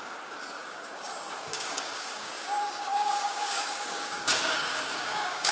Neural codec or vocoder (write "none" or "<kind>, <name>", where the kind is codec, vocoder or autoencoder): codec, DAC